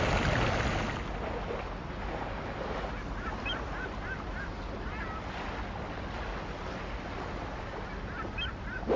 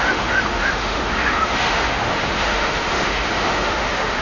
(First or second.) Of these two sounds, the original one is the first